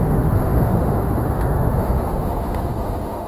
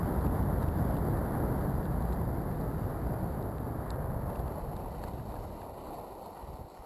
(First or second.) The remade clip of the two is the first